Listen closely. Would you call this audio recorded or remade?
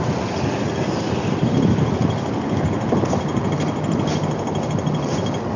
recorded